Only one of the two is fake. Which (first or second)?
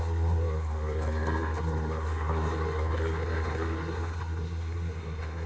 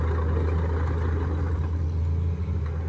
first